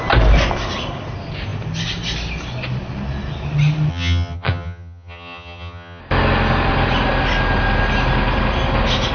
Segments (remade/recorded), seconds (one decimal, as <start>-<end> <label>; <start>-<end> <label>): 0.0-3.9 recorded; 3.9-6.0 remade; 6.0-9.1 recorded